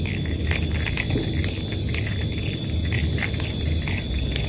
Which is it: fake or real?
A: real